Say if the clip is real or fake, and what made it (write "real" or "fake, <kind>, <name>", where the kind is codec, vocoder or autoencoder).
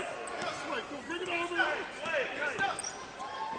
real